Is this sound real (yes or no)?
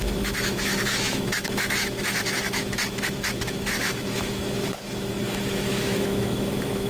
no